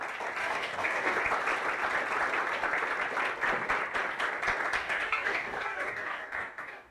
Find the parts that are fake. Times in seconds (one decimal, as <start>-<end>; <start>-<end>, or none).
0.4-1.2; 4.8-6.9